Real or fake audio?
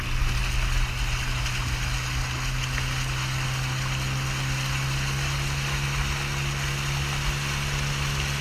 real